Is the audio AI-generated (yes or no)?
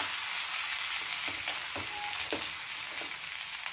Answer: no